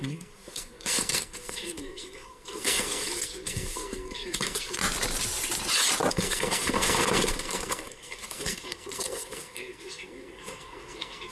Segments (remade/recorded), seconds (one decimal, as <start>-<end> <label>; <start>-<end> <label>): 0.0-4.8 remade; 4.8-6.1 recorded; 6.1-11.3 remade